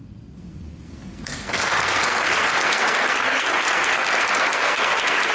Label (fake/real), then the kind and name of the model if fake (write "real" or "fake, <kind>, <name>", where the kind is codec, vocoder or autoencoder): fake, codec, SNAC